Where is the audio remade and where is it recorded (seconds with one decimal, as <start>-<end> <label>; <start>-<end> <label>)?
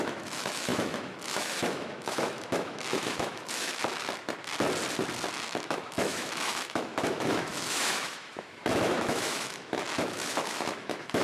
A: 0.0-3.8 remade; 3.8-5.3 recorded; 5.3-11.2 remade